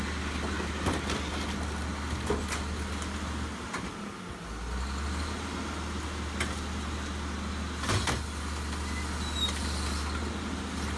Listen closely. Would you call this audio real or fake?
real